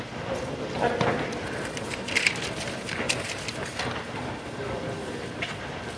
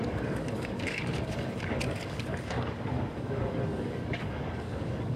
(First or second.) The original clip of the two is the first